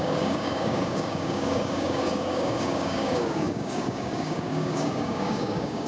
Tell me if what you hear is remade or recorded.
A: remade